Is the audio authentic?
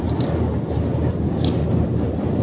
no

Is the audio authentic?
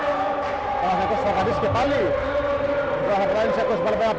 yes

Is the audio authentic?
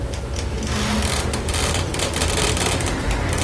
yes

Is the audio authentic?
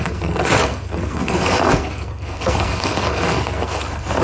no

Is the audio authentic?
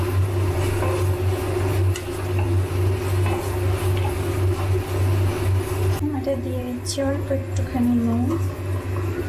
yes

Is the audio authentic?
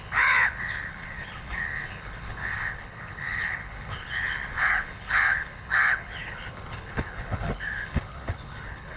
no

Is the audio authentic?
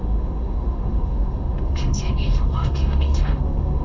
no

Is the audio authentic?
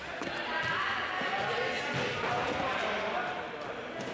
yes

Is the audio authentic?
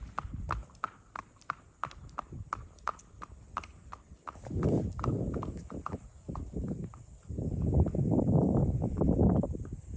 no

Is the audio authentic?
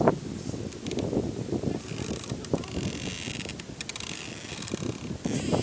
yes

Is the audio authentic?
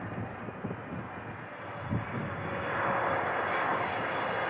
yes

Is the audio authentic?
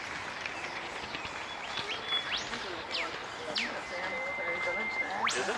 yes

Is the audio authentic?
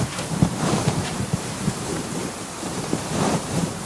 no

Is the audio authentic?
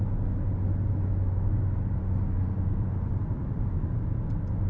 yes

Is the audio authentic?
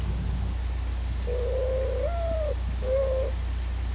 yes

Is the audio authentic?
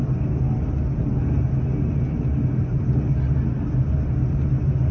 yes